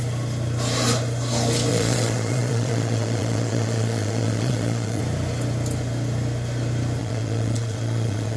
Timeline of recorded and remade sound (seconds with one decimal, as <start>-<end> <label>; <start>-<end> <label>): 0.0-1.7 recorded; 1.7-5.0 remade; 5.0-7.0 recorded; 7.0-8.4 remade

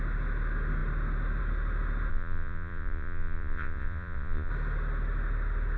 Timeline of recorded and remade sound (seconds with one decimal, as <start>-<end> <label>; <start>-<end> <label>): 0.0-2.1 recorded; 2.1-4.5 remade; 4.5-5.8 recorded

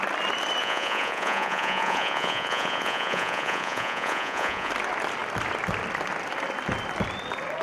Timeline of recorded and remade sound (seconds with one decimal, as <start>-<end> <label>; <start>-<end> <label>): 0.0-0.6 recorded; 0.6-4.7 remade; 4.7-7.6 recorded

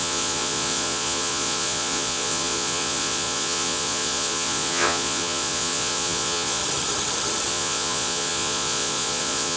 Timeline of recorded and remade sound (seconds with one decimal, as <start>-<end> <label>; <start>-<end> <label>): 0.0-6.6 remade; 6.6-7.5 recorded; 7.5-9.6 remade

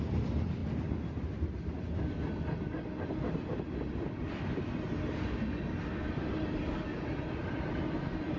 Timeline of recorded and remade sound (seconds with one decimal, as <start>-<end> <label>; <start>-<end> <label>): 0.0-8.4 recorded